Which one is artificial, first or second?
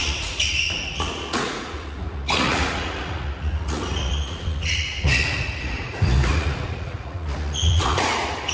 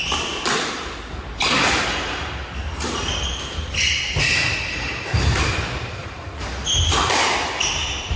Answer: first